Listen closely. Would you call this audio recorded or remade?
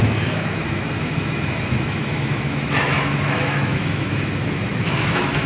remade